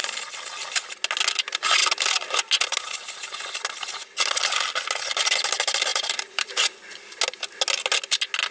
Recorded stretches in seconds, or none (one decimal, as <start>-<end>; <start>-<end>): 0.0-5.9; 6.5-8.5